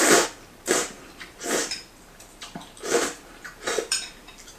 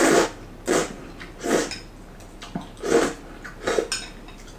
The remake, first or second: first